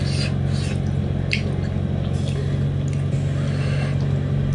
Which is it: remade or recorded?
recorded